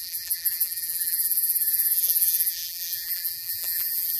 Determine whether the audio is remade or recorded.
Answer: remade